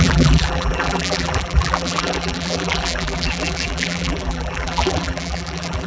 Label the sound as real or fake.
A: fake